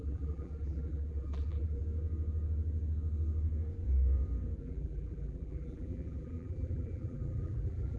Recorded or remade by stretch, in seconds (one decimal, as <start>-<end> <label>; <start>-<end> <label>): 0.0-1.8 remade; 1.8-4.6 recorded; 4.6-8.0 remade